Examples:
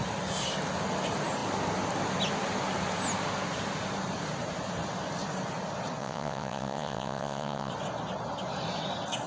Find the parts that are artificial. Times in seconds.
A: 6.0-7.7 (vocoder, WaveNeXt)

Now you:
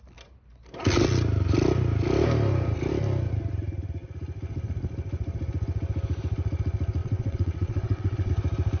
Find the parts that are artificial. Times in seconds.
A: 7.0-8.3 (vocoder, WaveNeXt)